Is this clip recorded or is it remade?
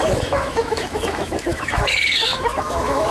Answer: remade